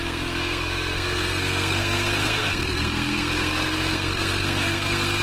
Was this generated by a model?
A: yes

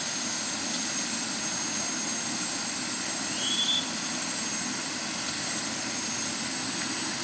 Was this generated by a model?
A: no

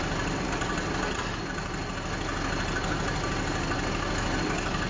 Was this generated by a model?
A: no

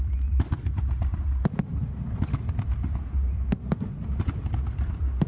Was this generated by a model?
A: no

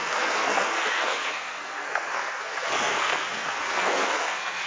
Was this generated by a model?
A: yes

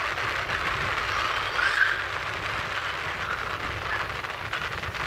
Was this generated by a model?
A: no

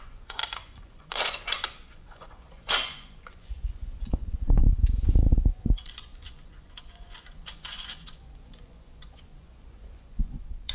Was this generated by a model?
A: yes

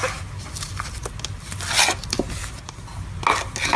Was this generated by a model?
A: no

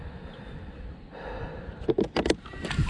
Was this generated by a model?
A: yes